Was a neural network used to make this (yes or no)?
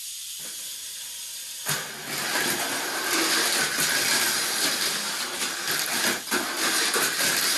no